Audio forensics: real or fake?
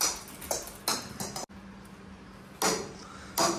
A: real